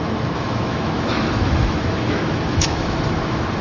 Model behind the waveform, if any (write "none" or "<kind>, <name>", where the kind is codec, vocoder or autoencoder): autoencoder, DAC-VAE